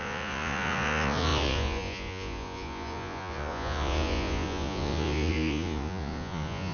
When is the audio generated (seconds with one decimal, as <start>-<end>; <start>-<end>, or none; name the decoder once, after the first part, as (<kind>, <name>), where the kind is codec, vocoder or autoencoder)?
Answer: 0.0-6.7 (vocoder, Vocos)